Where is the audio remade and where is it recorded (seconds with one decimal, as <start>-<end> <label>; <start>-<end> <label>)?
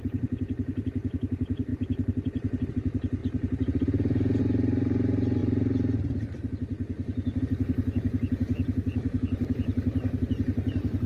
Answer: 0.0-3.2 remade; 3.2-4.4 recorded; 4.4-5.4 remade; 5.4-7.4 recorded; 7.4-11.1 remade